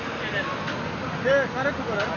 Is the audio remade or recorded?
recorded